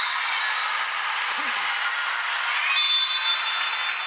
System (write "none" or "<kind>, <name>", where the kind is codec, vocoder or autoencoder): none